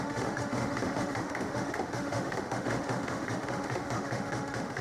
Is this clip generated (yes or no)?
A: yes